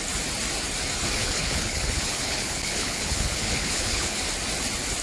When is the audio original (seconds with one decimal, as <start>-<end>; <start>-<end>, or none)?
0.0-1.2; 4.2-5.0